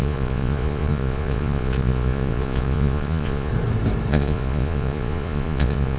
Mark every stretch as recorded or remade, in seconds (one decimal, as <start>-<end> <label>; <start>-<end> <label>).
0.0-3.5 remade; 3.5-4.1 recorded; 4.1-6.0 remade